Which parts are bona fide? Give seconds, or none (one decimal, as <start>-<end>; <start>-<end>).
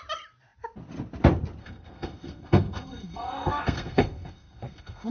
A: 0.0-1.6